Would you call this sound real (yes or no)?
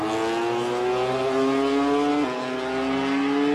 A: yes